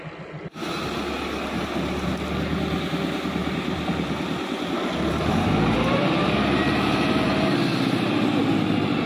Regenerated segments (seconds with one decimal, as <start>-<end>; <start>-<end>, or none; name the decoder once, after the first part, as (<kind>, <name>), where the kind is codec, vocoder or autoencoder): 3.4-8.4 (vocoder, BigVGAN v2)